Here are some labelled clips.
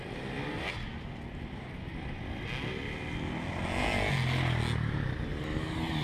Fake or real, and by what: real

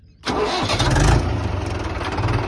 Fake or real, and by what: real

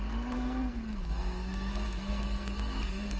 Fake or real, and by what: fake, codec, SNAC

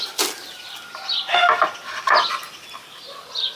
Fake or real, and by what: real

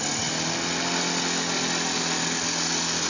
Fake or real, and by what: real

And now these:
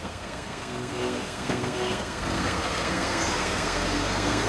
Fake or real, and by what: fake, codec, SNAC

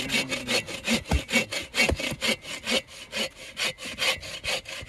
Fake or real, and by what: real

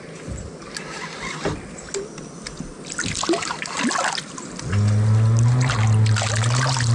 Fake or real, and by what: real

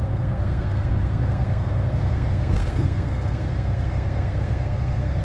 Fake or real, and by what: fake, codec, SNAC